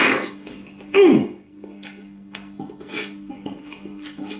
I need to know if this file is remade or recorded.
remade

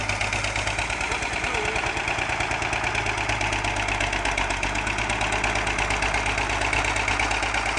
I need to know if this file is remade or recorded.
recorded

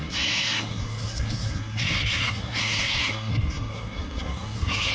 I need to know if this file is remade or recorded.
remade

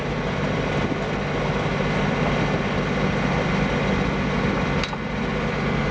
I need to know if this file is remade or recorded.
recorded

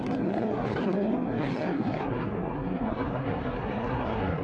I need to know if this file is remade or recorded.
remade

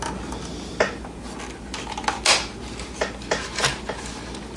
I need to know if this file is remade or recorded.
recorded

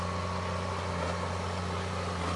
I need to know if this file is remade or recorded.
recorded